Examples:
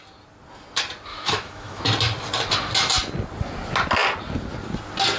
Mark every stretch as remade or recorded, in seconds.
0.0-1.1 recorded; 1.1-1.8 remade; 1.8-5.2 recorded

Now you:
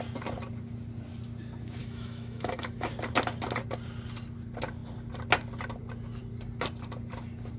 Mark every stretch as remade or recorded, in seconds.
0.0-1.8 recorded; 1.8-2.9 remade; 2.9-7.6 recorded

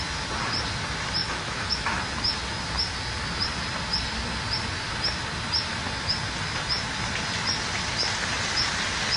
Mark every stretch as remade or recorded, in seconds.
0.0-1.2 recorded; 1.2-2.0 remade; 2.0-9.2 recorded

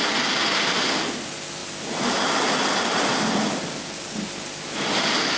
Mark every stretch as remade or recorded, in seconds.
0.0-5.4 recorded

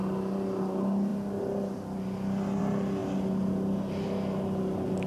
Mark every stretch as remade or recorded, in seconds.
0.0-5.1 recorded

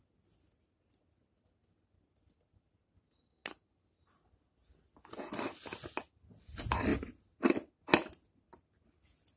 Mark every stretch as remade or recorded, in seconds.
0.0-9.4 recorded

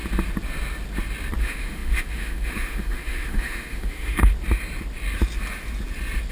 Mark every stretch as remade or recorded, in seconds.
0.0-1.4 recorded; 1.4-4.3 remade; 4.3-6.3 recorded